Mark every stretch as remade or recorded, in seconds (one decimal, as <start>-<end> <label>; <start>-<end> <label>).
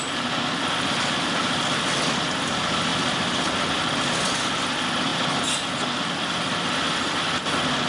0.0-7.9 recorded